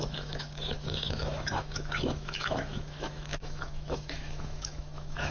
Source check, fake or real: fake